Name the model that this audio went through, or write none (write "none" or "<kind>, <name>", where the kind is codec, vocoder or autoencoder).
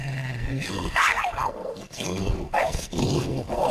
codec, SNAC